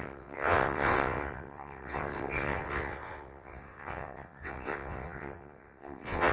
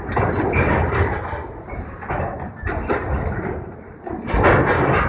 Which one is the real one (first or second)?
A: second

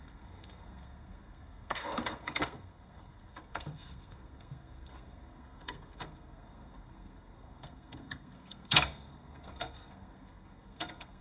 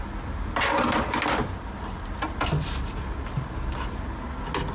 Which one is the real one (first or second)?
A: second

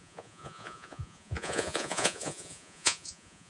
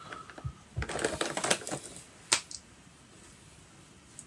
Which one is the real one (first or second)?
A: second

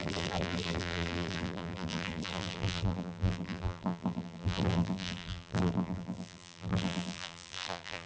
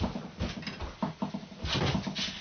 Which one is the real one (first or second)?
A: second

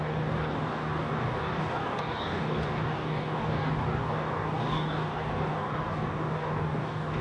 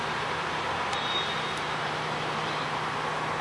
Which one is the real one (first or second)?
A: second